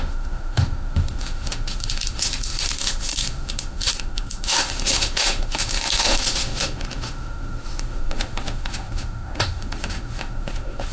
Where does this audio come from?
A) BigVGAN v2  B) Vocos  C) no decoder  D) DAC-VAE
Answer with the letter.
D